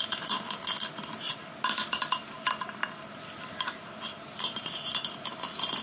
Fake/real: real